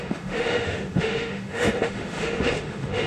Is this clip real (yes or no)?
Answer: no